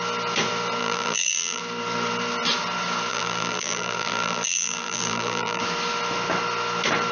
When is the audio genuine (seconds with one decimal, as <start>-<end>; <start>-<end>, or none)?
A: 0.0-0.8; 1.6-3.1; 5.6-7.1